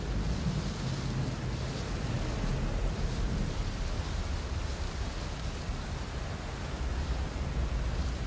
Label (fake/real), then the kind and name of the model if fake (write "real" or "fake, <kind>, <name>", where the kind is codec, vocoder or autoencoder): real